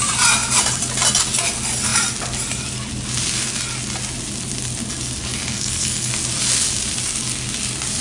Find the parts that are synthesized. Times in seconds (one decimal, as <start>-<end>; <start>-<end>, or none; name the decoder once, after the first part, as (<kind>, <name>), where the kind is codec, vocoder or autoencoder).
5.3-6.1 (codec, SNAC)